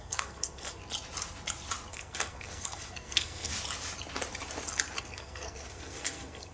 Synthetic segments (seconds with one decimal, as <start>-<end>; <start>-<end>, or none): 0.0-0.8; 1.9-3.5; 5.0-6.5